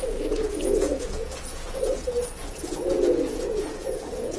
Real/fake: fake